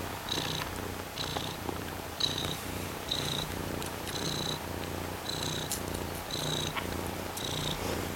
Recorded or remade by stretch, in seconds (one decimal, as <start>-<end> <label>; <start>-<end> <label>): 0.0-1.3 recorded; 1.3-4.1 remade; 4.1-8.2 recorded